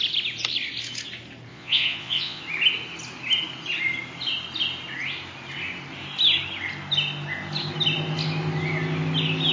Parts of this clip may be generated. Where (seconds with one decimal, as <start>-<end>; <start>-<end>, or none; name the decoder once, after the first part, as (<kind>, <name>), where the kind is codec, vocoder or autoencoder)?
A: 1.5-2.4 (vocoder, Vocos)